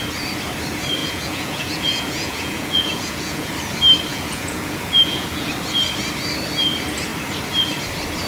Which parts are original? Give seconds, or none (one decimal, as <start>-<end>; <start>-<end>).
0.0-1.0; 3.5-4.1; 5.5-8.3